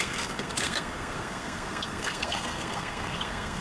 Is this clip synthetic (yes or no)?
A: yes